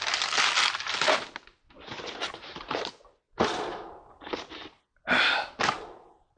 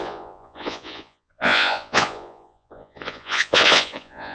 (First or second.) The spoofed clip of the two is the second